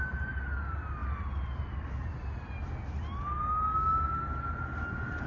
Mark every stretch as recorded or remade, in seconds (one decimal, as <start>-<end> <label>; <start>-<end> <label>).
0.0-5.3 recorded